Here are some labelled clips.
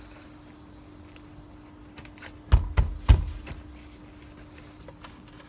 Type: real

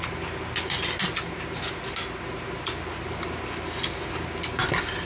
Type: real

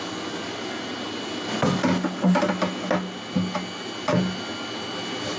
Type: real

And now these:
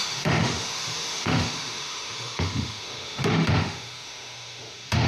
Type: fake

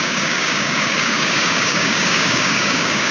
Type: fake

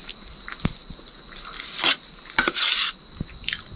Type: real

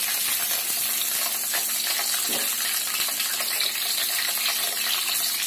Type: real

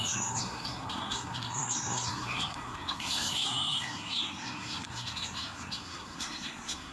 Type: fake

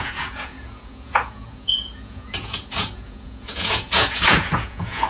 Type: fake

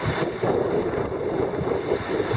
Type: fake